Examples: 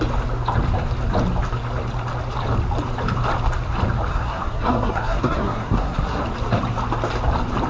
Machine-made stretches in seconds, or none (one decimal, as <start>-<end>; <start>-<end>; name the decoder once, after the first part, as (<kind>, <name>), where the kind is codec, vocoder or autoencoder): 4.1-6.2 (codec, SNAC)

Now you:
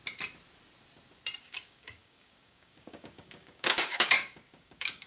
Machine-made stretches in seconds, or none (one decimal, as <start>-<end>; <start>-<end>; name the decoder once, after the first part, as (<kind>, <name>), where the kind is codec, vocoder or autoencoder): 1.4-5.1 (codec, DAC)

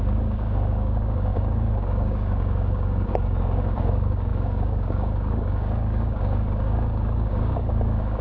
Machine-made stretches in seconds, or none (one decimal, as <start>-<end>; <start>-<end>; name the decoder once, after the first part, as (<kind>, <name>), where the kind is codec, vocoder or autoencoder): 0.0-8.2 (codec, DAC)

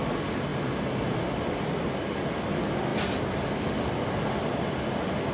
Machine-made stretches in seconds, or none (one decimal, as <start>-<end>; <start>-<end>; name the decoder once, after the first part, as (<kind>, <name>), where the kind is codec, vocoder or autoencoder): none